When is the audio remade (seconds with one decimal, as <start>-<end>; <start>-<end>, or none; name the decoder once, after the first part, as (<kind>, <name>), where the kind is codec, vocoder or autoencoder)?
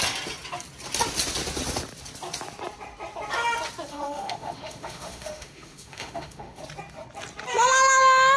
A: 3.9-6.6 (autoencoder, DAC-VAE)